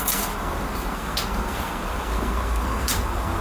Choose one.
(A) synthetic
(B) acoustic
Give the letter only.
A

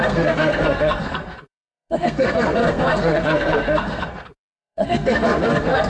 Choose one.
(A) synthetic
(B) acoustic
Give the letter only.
A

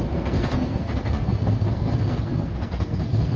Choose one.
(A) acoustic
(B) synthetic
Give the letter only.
B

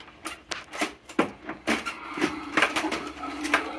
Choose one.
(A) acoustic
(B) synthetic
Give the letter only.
A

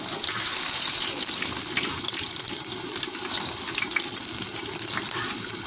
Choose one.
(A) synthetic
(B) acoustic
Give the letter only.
B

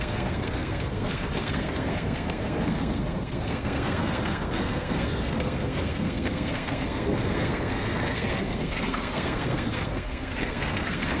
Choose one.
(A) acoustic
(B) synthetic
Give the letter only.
B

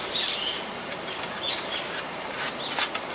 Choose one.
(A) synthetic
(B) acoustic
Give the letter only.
B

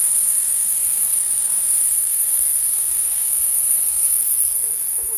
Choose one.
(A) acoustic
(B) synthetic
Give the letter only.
B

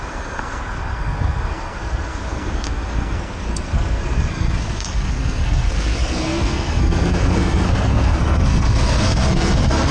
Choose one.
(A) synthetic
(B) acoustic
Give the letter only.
A